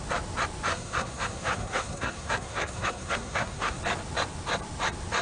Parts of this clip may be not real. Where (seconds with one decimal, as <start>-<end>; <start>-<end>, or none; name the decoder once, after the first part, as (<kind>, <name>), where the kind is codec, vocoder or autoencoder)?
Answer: 0.7-3.8 (codec, SNAC)